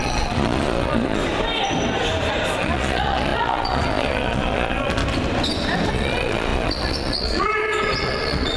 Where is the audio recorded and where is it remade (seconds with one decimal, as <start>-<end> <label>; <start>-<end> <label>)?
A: 0.0-1.2 remade; 1.2-2.6 recorded; 2.6-5.0 remade; 5.0-5.9 recorded; 5.9-8.6 remade